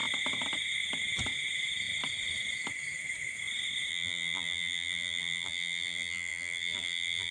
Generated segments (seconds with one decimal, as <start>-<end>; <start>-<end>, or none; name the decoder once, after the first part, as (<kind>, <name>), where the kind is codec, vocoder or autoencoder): 3.9-7.3 (vocoder, BigVGAN v2)